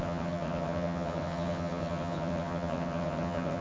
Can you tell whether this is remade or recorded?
remade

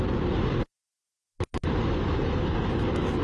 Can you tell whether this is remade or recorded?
recorded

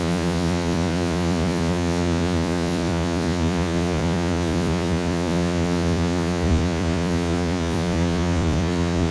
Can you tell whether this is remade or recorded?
remade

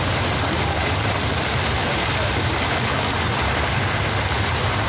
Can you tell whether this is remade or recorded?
recorded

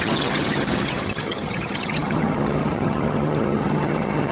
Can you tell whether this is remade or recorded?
remade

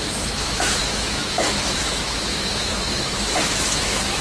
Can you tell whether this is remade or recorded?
remade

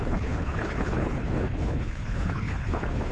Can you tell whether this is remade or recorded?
remade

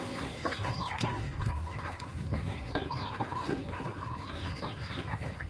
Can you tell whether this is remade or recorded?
remade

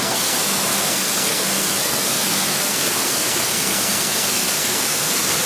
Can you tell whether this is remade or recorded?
remade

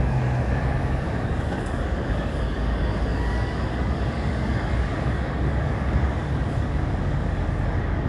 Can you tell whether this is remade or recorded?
remade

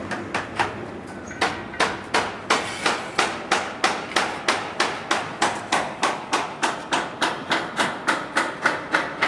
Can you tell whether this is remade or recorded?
remade